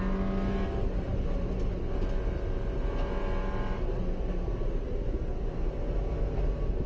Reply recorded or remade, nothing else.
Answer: recorded